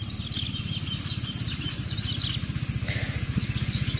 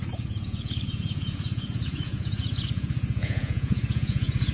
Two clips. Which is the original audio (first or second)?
first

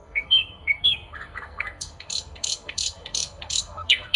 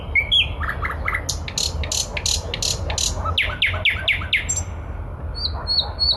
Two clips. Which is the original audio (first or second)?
second